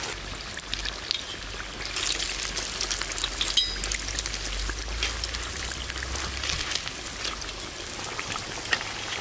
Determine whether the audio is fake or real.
real